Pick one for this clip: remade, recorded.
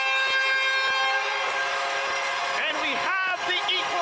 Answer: recorded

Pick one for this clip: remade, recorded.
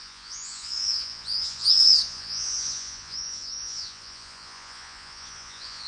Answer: remade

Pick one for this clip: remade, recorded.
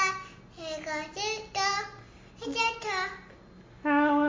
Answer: recorded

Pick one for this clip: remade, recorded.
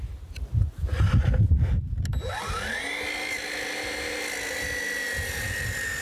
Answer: recorded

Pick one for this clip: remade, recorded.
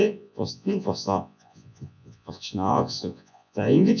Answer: remade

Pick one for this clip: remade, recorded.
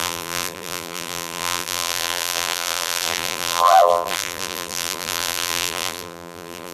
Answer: remade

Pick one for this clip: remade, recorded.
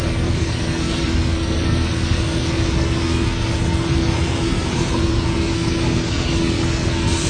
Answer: remade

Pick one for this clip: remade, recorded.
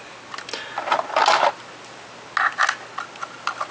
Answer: recorded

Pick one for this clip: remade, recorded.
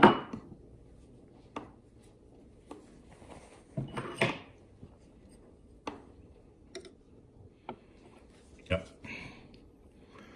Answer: recorded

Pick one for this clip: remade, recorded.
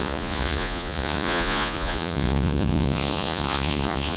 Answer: remade